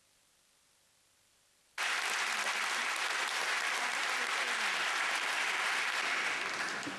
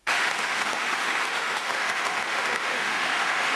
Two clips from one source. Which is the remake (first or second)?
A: second